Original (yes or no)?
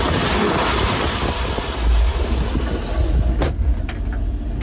yes